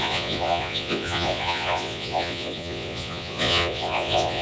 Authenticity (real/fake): fake